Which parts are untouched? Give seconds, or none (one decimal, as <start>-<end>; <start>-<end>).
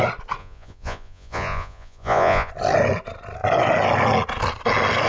0.0-0.4; 2.5-5.1